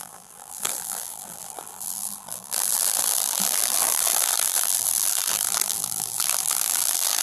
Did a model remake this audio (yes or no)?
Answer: yes